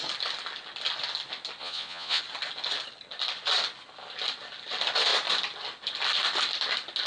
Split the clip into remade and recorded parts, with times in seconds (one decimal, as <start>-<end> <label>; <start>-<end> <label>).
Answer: 0.0-1.6 recorded; 1.6-2.2 remade; 2.2-7.1 recorded

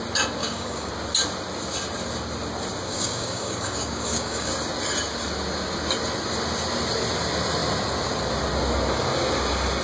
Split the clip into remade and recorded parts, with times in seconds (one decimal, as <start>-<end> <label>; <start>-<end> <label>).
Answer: 0.0-0.4 recorded; 0.4-0.9 remade; 0.9-2.9 recorded; 2.9-4.5 remade; 4.5-9.8 recorded

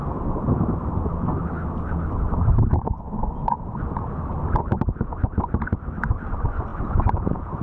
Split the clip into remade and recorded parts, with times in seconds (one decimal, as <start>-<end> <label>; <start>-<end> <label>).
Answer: 0.0-7.6 recorded

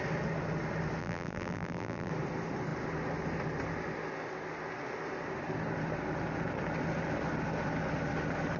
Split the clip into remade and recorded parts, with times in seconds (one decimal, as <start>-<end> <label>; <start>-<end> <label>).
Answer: 0.0-1.0 recorded; 1.0-2.1 remade; 2.1-8.6 recorded

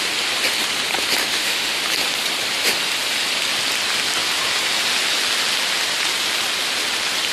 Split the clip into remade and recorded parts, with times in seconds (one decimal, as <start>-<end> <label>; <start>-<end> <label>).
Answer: 0.0-1.2 recorded; 1.2-1.8 remade; 1.8-7.3 recorded

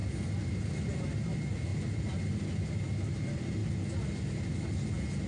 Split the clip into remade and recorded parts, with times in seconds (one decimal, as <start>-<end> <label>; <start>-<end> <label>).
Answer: 0.0-5.3 recorded